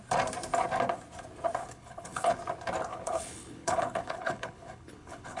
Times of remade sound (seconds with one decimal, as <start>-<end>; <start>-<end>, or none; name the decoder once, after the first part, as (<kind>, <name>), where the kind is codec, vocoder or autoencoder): 1.6-2.4 (codec, HILCodec); 2.9-5.4